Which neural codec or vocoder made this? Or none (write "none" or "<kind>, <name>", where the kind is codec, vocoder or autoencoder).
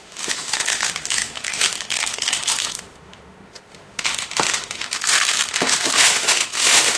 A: autoencoder, DAC-VAE